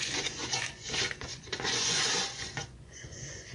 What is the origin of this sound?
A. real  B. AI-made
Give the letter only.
B